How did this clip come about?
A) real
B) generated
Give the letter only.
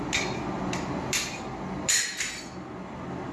A